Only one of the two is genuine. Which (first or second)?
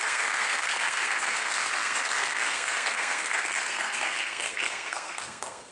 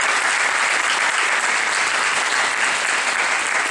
second